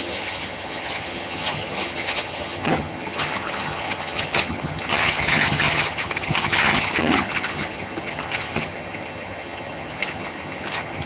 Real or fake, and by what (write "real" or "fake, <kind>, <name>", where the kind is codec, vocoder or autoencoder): fake, vocoder, HiFi-GAN